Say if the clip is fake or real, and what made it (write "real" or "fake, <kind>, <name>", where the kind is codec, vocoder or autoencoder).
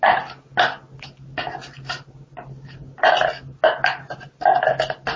real